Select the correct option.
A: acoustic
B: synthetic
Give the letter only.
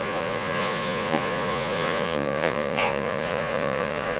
B